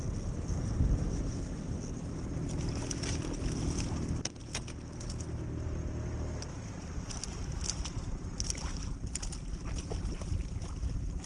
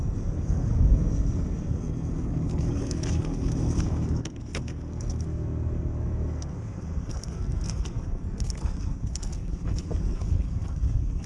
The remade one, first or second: second